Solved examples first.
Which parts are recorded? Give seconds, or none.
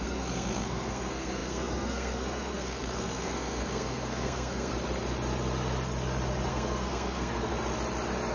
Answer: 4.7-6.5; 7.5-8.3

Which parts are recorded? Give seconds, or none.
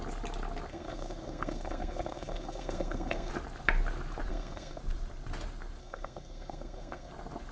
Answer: 0.0-0.7; 3.3-4.3; 4.8-5.8; 7.1-7.5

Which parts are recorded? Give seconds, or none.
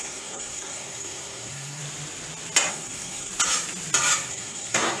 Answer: 1.8-2.7; 3.3-4.3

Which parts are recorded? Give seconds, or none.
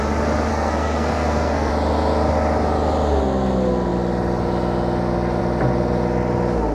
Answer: 0.0-0.5; 1.7-6.7